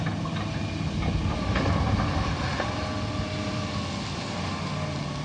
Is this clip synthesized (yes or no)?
no